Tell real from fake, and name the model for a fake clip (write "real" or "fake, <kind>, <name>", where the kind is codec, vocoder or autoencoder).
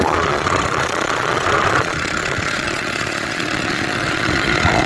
fake, vocoder, Vocos